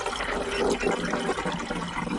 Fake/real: real